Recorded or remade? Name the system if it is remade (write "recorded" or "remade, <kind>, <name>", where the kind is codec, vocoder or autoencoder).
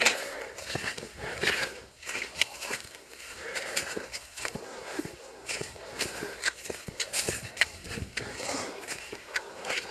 remade, codec, SNAC